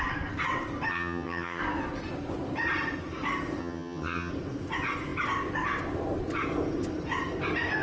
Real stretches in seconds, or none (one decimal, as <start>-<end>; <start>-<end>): 0.0-0.9; 1.6-3.6; 4.3-7.8